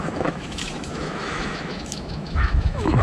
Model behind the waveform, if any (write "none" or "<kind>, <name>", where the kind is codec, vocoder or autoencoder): autoencoder, DAC-VAE